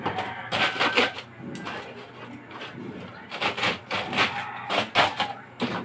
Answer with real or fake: real